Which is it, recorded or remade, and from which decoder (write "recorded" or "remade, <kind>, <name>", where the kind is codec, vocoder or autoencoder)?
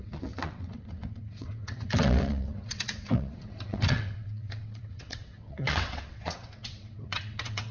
remade, vocoder, WaveNeXt